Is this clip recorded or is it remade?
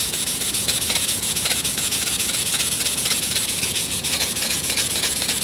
remade